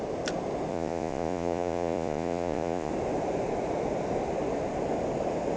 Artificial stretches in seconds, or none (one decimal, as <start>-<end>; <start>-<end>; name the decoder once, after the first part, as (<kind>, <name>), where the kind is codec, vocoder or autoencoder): 0.7-2.9 (vocoder, Vocos)